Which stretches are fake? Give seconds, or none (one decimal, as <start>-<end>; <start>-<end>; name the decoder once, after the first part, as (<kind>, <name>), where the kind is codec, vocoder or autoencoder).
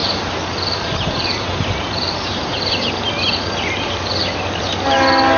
0.0-2.5 (vocoder, BigVGAN v2)